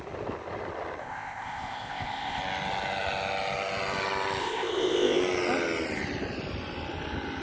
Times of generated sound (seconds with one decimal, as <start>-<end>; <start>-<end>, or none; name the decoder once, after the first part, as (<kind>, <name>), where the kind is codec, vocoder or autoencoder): 1.0-2.4 (codec, ZipCodec); 4.4-5.2